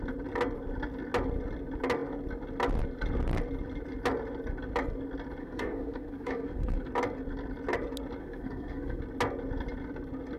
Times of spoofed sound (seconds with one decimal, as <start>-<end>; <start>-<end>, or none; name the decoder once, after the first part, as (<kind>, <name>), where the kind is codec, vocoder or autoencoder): 5.4-6.9 (codec, SNAC); 8.2-9.0